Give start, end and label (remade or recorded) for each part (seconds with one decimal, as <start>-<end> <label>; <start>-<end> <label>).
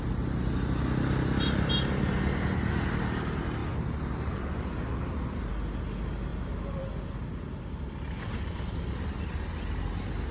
0.0-3.6 recorded; 3.6-5.5 remade; 5.5-6.3 recorded; 6.3-9.0 remade; 9.0-10.3 recorded